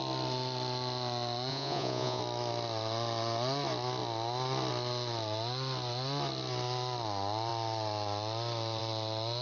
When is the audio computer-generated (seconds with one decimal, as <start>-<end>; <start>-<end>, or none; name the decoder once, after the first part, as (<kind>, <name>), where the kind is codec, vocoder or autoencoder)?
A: 1.5-2.2 (vocoder, Vocos)